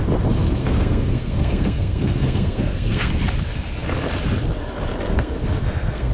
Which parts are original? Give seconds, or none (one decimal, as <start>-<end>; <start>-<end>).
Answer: 0.0-0.6; 3.1-5.1